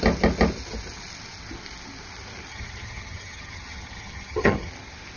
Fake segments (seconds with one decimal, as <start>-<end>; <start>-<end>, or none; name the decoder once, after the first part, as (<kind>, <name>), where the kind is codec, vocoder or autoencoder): 2.5-4.7 (vocoder, HiFi-GAN)